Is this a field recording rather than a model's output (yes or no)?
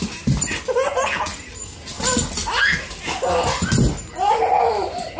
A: yes